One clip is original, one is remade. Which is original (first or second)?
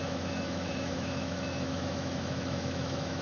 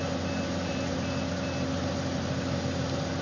second